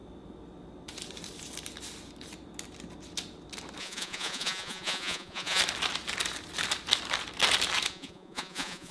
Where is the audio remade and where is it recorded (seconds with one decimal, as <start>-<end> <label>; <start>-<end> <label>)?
0.0-3.8 recorded; 3.8-5.6 remade; 5.6-7.9 recorded; 7.9-8.9 remade